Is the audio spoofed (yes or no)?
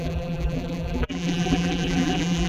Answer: yes